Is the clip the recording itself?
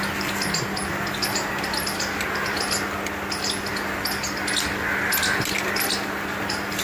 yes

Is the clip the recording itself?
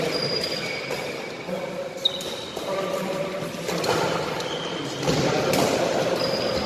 yes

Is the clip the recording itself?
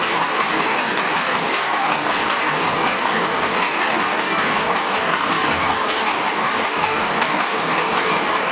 no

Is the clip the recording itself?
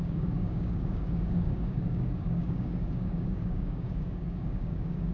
no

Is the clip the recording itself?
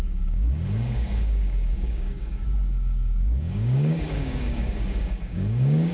no